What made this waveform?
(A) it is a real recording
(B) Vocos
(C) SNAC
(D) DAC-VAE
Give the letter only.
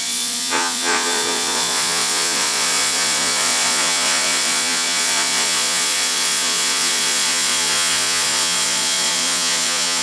B